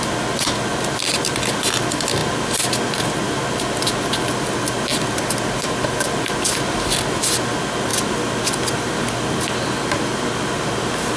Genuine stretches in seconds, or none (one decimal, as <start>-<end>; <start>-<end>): 0.0-11.2